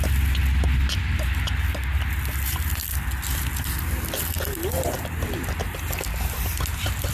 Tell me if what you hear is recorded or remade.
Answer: recorded